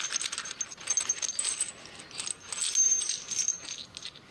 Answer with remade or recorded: recorded